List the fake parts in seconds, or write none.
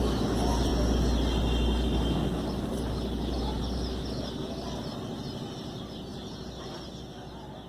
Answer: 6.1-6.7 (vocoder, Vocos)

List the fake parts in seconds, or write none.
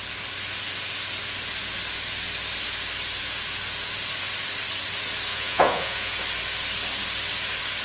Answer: 5.3-6.1 (vocoder, Vocos)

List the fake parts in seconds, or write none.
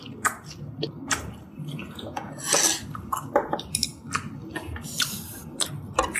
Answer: 1.8-2.3 (vocoder, Vocos)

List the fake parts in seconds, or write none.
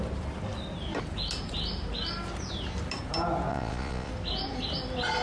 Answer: 3.5-4.1 (vocoder, Vocos)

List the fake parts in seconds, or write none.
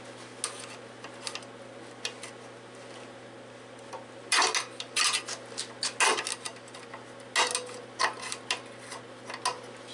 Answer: none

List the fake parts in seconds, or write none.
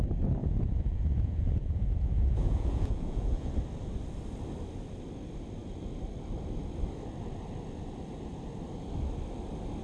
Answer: 0.4-3.5 (vocoder, Vocos)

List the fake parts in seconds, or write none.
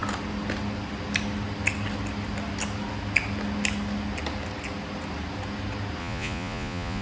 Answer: 6.0-7.0 (vocoder, Vocos)